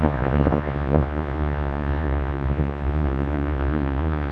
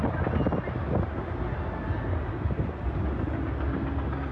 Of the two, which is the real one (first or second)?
second